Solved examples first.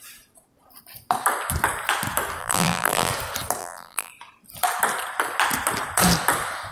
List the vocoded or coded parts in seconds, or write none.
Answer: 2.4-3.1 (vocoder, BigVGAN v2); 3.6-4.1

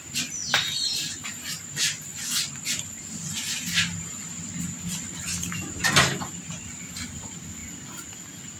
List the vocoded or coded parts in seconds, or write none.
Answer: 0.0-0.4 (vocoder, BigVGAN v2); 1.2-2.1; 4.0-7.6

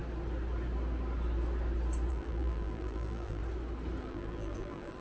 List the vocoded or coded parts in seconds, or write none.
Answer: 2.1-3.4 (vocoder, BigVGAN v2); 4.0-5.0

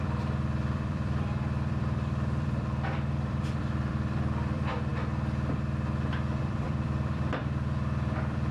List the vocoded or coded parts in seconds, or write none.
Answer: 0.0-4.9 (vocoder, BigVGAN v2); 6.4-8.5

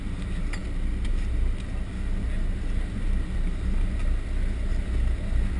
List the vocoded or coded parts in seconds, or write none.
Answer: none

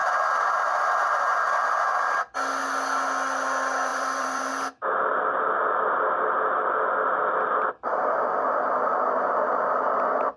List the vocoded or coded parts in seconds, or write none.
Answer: 3.9-4.5 (vocoder, BigVGAN v2)